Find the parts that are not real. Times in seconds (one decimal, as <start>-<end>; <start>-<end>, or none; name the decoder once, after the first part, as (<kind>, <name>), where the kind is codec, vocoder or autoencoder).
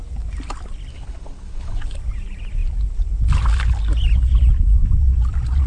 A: 0.9-1.8 (codec, HILCodec)